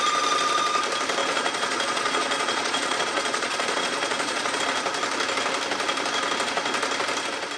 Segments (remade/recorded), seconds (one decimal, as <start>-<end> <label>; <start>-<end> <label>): 0.0-1.2 recorded; 1.2-4.6 remade; 4.6-7.6 recorded